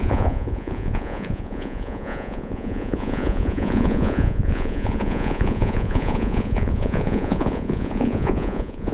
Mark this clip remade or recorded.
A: remade